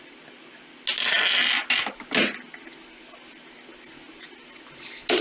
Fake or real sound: real